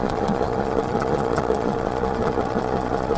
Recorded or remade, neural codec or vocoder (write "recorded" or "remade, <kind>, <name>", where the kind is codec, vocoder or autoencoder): remade, vocoder, Vocos